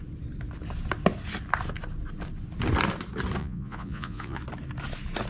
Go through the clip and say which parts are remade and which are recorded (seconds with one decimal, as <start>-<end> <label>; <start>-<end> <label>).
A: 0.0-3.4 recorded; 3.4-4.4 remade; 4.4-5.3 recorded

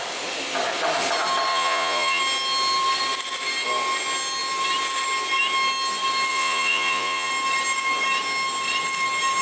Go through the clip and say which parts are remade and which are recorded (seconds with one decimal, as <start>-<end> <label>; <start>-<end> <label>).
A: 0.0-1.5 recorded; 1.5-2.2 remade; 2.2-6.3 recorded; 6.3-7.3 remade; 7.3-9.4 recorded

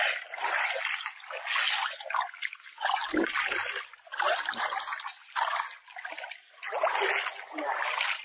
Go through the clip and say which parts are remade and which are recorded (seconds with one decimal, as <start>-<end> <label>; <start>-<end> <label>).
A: 0.0-8.2 recorded